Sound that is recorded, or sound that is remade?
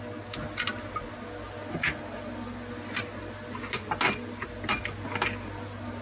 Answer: recorded